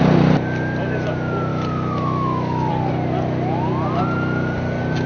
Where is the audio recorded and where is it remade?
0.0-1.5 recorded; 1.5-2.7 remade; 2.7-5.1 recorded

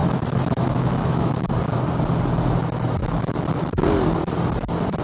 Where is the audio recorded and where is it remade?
0.0-1.5 remade; 1.5-3.0 recorded; 3.0-3.7 remade; 3.7-5.0 recorded

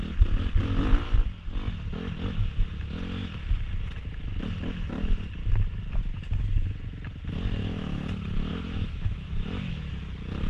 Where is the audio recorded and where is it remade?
0.0-7.6 recorded; 7.6-8.1 remade; 8.1-8.5 recorded; 8.5-9.7 remade; 9.7-10.5 recorded

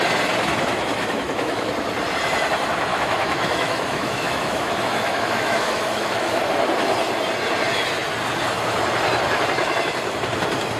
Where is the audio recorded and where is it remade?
0.0-0.9 recorded; 0.9-1.7 remade; 1.7-2.9 recorded; 2.9-6.4 remade; 6.4-10.8 recorded

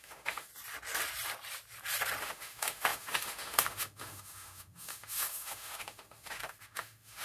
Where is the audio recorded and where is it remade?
0.0-0.5 remade; 0.5-2.2 recorded; 2.2-7.2 remade

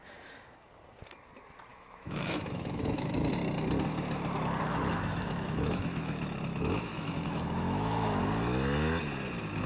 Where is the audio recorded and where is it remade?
0.0-1.7 recorded; 1.7-3.3 remade; 3.3-4.7 recorded; 4.7-8.2 remade; 8.2-9.7 recorded

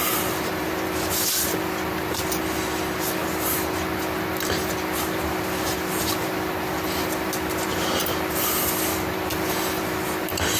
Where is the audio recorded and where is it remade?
0.0-10.6 recorded